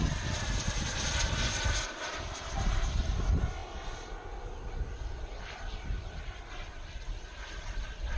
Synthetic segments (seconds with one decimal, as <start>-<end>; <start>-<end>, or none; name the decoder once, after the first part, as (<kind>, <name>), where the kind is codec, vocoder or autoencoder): 0.0-3.6 (vocoder, BigVGAN v2); 5.4-8.2